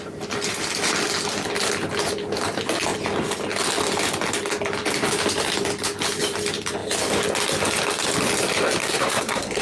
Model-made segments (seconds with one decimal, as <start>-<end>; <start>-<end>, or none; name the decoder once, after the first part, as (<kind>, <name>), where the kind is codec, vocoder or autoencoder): 8.8-9.6 (codec, SNAC)